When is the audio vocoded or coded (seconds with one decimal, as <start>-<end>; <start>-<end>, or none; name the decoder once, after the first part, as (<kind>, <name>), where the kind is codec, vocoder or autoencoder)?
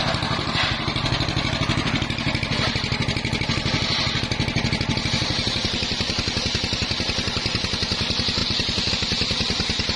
none